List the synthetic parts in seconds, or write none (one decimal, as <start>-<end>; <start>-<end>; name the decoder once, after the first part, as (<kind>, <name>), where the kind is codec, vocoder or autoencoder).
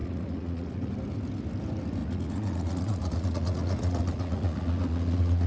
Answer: 0.0-0.9 (vocoder, Vocos); 2.0-5.5